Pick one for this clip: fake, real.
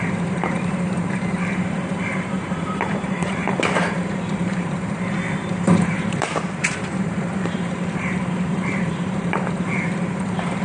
fake